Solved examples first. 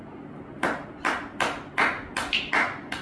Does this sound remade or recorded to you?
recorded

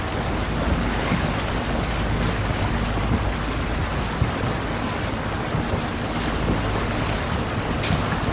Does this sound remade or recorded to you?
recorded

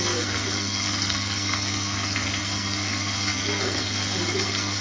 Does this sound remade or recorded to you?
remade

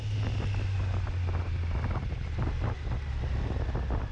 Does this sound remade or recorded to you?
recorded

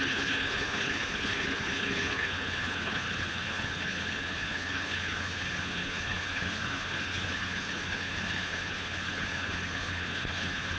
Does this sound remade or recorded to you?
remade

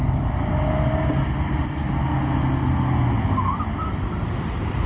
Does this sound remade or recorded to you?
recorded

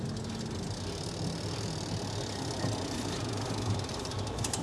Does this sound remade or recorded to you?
recorded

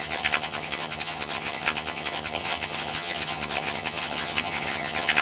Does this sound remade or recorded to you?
remade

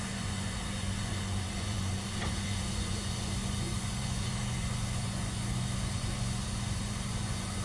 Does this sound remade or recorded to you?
remade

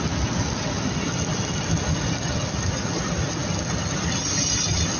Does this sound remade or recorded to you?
recorded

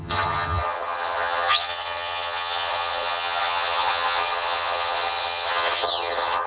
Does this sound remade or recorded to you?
remade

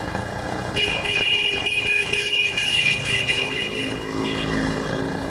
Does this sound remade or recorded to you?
remade